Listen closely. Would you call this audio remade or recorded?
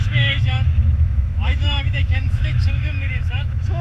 remade